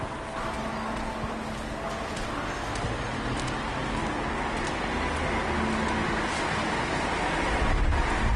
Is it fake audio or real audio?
real